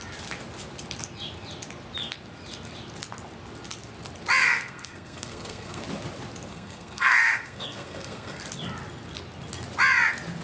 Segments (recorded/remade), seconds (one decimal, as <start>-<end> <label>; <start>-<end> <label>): 0.0-4.4 recorded; 4.4-5.8 remade; 5.8-6.5 recorded; 6.5-8.4 remade; 8.4-10.4 recorded